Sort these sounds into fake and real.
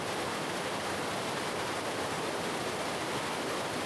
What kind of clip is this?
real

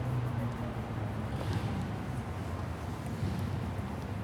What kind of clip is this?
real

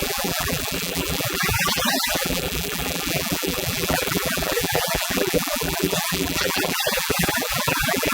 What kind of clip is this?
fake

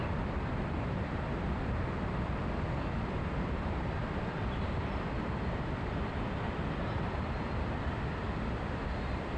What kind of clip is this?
fake